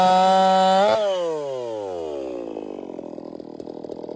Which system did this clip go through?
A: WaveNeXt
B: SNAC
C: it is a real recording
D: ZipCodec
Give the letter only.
C